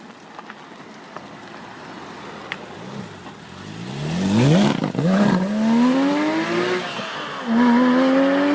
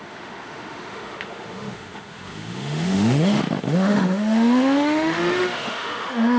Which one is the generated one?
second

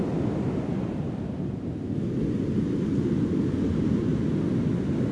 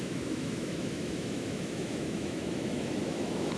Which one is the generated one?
second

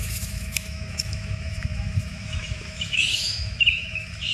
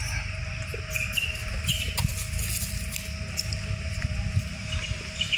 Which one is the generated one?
first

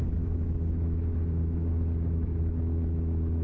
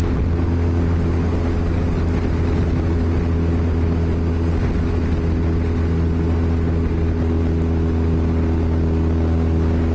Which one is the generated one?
first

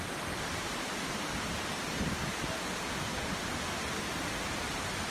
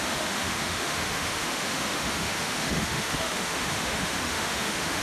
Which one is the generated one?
second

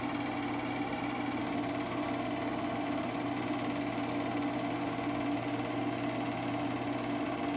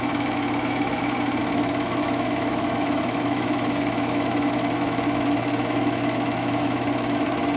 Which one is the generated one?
second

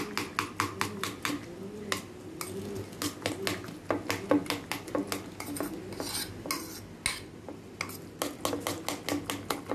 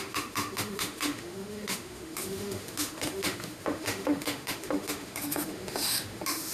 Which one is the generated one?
second